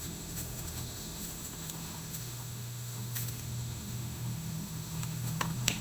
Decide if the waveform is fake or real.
fake